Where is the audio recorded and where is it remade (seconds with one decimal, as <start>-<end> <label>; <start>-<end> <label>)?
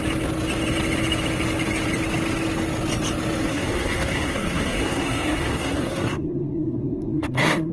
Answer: 0.0-3.5 recorded; 3.5-7.7 remade